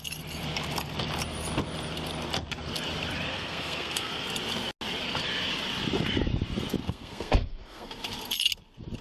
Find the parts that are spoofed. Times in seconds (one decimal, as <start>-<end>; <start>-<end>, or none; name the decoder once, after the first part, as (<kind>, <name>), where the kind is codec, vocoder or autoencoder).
3.3-4.1 (codec, SNAC); 6.8-8.0